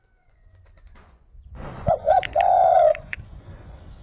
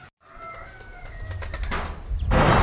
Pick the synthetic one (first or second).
first